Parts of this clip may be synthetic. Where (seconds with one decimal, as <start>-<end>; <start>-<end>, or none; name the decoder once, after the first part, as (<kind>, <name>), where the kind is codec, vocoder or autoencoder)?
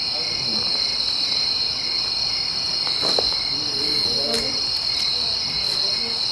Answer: none